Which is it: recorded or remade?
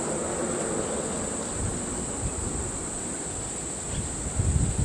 recorded